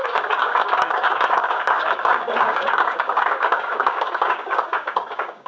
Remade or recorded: remade